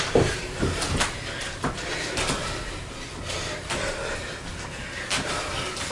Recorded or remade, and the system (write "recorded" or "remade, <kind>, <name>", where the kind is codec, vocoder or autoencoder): recorded